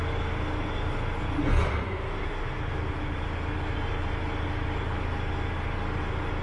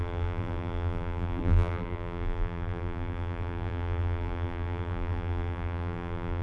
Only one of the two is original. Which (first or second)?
first